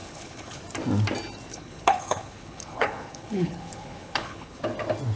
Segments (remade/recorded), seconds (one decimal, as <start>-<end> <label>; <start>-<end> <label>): 0.0-0.6 remade; 0.6-1.5 recorded; 1.5-4.6 remade; 4.6-5.2 recorded